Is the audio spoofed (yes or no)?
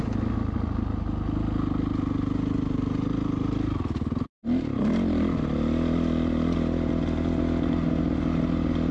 no